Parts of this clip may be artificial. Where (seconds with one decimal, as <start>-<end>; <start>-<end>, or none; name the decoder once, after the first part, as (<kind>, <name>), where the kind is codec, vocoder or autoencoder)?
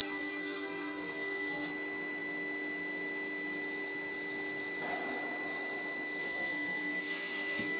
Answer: 0.0-1.7 (codec, SNAC); 6.2-7.8